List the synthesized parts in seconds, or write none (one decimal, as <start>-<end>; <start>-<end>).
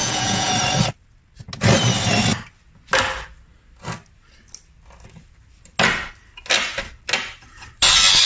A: 0.0-0.5